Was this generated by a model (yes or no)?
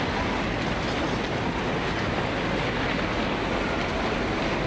no